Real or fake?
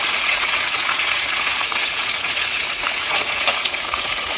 fake